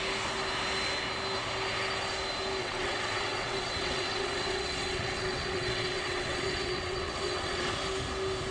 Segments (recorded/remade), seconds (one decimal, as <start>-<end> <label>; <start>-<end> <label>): 0.0-2.6 recorded; 2.6-7.7 remade; 7.7-8.5 recorded